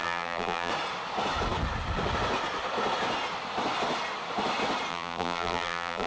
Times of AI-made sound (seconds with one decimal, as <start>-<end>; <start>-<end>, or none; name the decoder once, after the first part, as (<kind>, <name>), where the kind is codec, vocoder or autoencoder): 0.0-0.7 (vocoder, BigVGAN v2); 4.9-6.1